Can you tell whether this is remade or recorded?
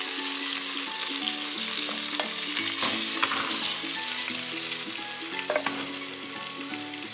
recorded